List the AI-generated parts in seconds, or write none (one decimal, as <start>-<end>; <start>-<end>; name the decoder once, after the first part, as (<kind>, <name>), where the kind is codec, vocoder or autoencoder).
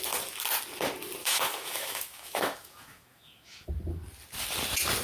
1.2-3.7 (autoencoder, DAC-VAE)